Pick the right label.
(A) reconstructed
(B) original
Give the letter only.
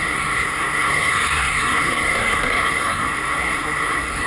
A